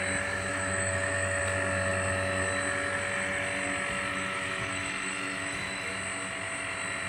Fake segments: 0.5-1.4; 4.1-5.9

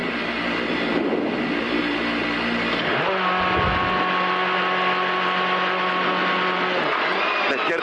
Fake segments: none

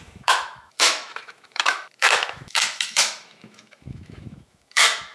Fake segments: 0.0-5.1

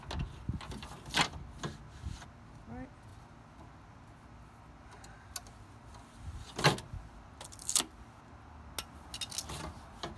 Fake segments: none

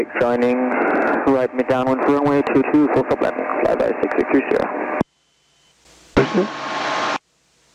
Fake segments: none

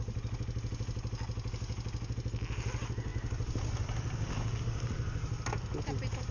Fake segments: none

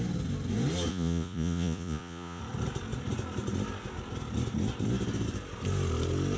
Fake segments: 0.9-2.4

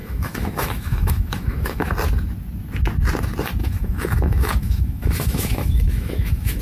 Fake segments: 0.0-1.9; 3.6-6.6